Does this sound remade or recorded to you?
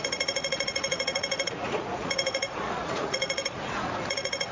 remade